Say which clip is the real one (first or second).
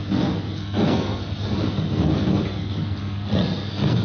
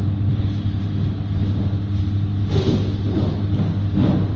second